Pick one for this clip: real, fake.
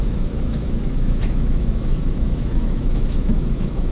fake